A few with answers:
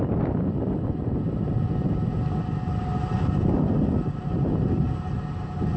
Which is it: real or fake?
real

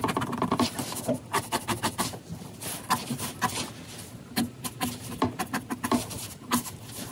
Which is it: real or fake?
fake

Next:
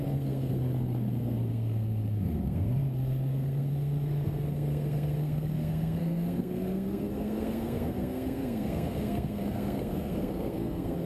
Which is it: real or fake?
fake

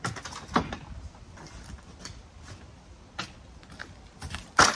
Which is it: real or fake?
real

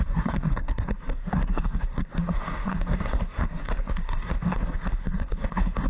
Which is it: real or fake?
fake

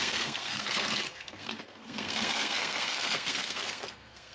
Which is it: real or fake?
fake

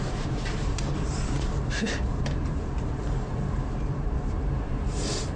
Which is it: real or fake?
fake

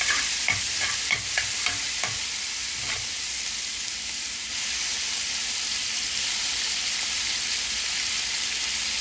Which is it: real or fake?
fake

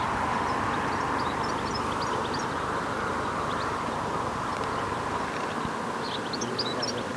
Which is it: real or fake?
real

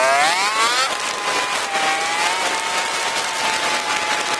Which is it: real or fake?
real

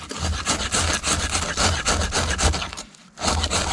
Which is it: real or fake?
real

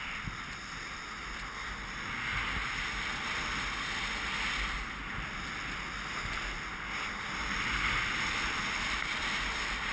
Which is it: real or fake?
real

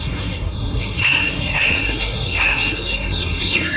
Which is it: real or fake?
fake